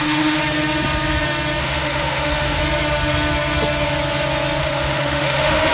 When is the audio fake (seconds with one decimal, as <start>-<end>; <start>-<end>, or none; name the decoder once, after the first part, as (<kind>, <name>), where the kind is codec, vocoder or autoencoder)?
0.0-0.4 (autoencoder, DAC-VAE); 1.6-2.6; 4.6-5.7